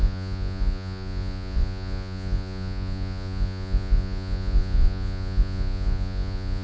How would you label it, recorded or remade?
remade